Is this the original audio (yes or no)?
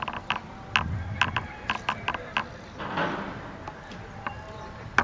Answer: yes